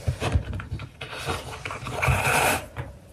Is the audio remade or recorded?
remade